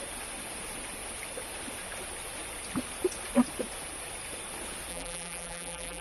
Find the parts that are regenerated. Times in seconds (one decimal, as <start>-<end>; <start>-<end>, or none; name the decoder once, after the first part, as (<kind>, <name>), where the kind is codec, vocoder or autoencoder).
4.9-6.0 (vocoder, BigVGAN v2)